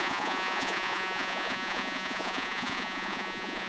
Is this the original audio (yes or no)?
no